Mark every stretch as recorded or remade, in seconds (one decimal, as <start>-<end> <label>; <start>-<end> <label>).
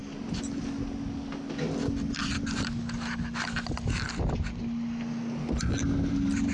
0.0-6.5 recorded